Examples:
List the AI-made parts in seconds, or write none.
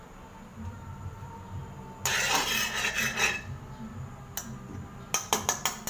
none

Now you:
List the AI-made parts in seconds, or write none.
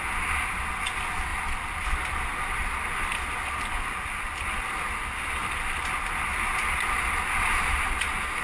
none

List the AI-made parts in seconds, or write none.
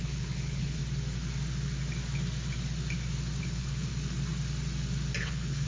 0.0-0.8 (codec, HILCodec); 3.4-3.9; 5.2-5.7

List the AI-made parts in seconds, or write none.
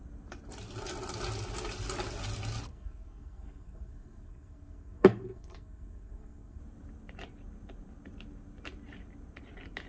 2.7-6.6 (codec, SNAC)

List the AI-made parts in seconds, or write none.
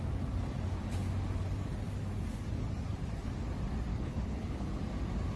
3.9-4.8 (codec, HILCodec)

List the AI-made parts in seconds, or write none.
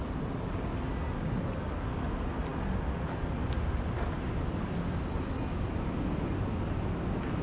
2.5-3.9 (vocoder, BigVGAN v2)